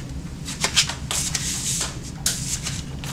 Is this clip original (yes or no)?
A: yes